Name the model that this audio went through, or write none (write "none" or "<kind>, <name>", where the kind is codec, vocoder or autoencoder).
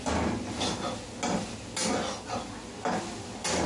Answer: none